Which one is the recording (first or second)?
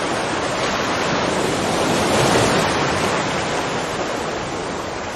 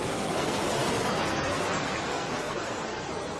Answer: first